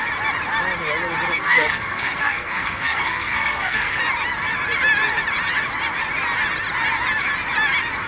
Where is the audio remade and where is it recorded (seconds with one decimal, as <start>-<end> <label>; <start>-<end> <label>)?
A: 0.0-1.3 recorded; 1.3-4.0 remade; 4.0-8.1 recorded